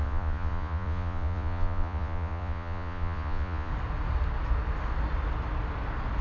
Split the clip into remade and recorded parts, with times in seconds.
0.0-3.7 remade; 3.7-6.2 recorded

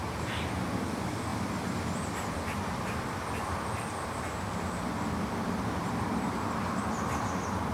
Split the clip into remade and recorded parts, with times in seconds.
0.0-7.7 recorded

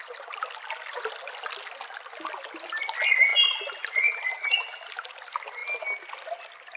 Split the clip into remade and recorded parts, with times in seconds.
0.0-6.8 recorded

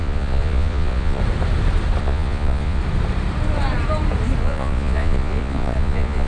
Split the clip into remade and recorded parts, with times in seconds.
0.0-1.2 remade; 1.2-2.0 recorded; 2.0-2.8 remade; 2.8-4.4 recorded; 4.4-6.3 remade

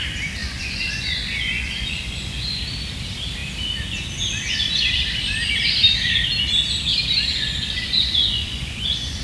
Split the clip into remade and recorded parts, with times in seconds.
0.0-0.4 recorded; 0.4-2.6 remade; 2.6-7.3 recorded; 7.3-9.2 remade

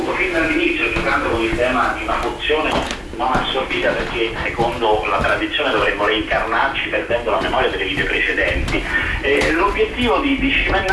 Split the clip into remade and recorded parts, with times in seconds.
0.0-10.9 recorded

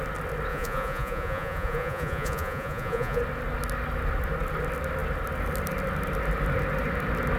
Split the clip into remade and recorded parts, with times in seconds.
0.0-0.5 recorded; 0.5-3.2 remade; 3.2-7.4 recorded